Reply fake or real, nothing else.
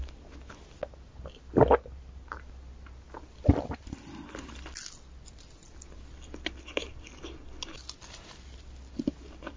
real